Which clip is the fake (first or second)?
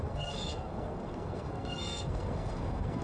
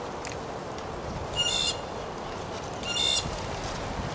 first